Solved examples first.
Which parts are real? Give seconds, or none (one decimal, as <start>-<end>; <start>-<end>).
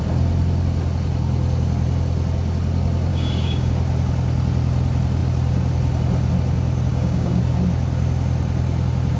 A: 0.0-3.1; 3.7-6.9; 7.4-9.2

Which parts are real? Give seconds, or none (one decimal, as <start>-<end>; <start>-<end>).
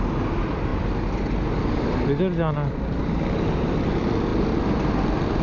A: 0.0-5.4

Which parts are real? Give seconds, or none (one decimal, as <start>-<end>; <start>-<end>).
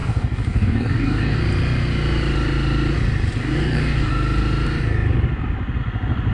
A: 1.4-3.4; 4.1-6.3